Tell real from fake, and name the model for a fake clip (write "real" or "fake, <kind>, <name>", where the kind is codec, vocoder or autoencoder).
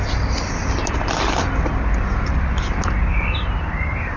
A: fake, vocoder, BigVGAN v2